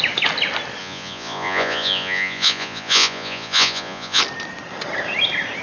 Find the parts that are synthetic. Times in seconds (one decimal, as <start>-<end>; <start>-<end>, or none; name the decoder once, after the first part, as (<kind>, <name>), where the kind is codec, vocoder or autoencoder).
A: 0.8-4.2 (vocoder, Vocos)